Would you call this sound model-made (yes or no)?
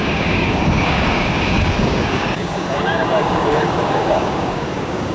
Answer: yes